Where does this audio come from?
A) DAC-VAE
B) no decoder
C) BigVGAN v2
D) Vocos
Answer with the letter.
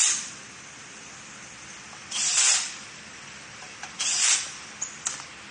B